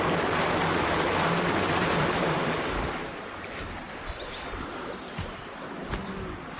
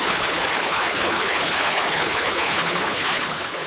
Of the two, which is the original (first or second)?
first